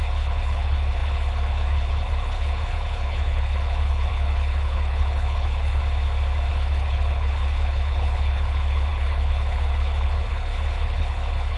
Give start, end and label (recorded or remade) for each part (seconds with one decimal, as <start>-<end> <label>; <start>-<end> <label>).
0.0-5.8 remade; 5.8-6.5 recorded; 6.5-11.6 remade

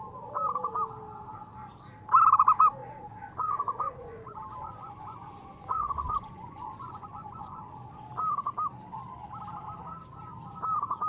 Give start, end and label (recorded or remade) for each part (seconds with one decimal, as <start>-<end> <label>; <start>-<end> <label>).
0.0-2.8 recorded; 2.8-7.7 remade; 7.7-11.1 recorded

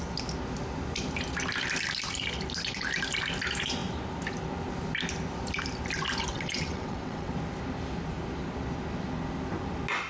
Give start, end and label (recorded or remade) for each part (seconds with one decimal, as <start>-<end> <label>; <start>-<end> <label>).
0.0-6.3 recorded; 6.3-7.3 remade; 7.3-10.1 recorded

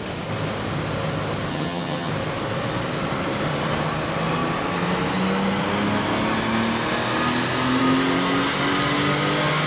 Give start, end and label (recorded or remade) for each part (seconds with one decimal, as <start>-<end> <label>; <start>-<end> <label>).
0.0-1.5 recorded; 1.5-2.1 remade; 2.1-9.7 recorded

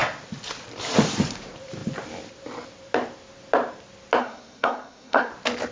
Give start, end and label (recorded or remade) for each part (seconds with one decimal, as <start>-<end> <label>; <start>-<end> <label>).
0.0-4.2 recorded; 4.2-5.3 remade; 5.3-5.7 recorded